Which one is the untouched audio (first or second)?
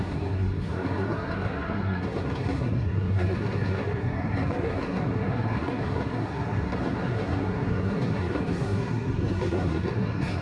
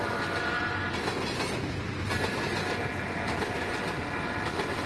second